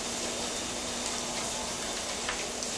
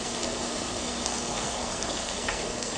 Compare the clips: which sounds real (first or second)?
first